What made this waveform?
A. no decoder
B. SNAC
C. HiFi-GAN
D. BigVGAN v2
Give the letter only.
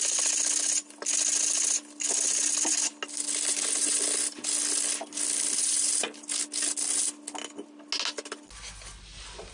A